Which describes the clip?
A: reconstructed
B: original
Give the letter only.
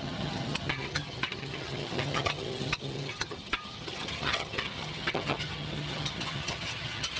A